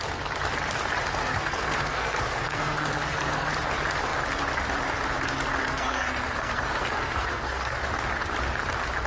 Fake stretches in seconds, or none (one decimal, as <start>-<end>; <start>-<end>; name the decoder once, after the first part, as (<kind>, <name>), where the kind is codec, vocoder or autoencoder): 1.2-3.5 (codec, SNAC); 5.6-7.8